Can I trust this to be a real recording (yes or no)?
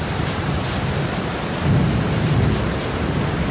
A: no